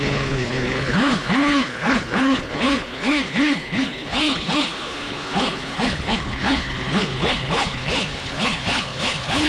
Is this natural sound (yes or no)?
no